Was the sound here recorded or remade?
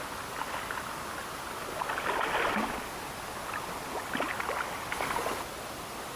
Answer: recorded